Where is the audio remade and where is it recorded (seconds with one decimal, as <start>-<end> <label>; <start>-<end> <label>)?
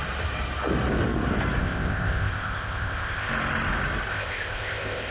0.0-1.6 recorded; 1.6-3.3 remade; 3.3-4.1 recorded; 4.1-5.1 remade